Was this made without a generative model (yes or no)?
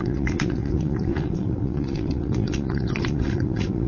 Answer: no